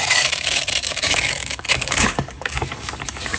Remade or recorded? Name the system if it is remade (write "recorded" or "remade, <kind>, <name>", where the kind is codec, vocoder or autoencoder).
remade, codec, DAC